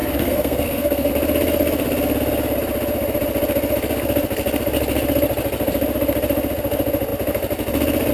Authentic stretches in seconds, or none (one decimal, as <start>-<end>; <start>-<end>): 1.1-8.1